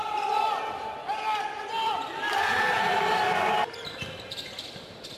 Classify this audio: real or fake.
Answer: fake